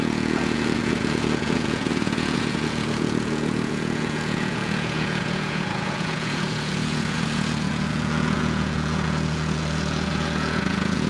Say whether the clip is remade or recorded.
remade